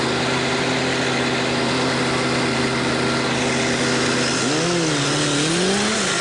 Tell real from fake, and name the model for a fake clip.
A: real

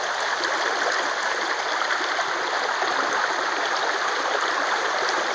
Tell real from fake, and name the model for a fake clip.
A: real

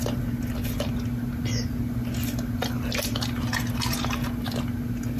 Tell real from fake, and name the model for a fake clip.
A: real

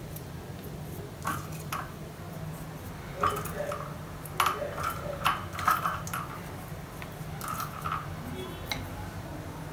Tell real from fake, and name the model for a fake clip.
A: real